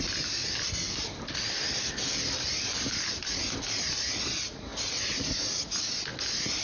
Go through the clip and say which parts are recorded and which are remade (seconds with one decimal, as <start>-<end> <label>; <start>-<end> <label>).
0.0-6.6 recorded